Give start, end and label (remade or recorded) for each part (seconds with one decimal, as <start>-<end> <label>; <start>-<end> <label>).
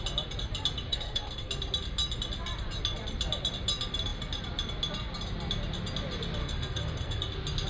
0.0-0.9 recorded; 0.9-1.5 remade; 1.5-6.4 recorded; 6.4-7.2 remade; 7.2-7.7 recorded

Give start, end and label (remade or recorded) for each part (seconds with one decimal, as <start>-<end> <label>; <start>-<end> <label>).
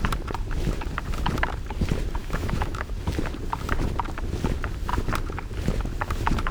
0.0-2.2 recorded; 2.2-2.9 remade; 2.9-6.5 recorded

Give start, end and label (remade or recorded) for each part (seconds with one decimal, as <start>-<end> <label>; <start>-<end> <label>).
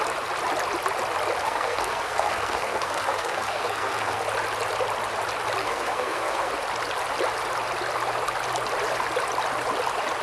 0.0-1.4 recorded; 1.4-4.2 remade; 4.2-5.6 recorded; 5.6-6.5 remade; 6.5-10.2 recorded